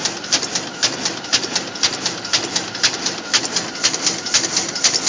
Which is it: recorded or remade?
recorded